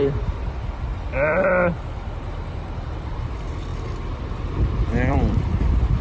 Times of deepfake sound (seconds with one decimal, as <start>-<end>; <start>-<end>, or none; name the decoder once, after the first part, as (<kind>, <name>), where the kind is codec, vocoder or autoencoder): 0.0-6.0 (vocoder, BigVGAN v2)